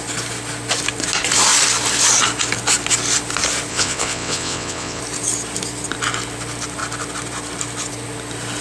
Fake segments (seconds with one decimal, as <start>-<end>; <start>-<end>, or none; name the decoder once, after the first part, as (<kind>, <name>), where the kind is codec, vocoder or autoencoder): 3.7-5.0 (vocoder, WaveNeXt)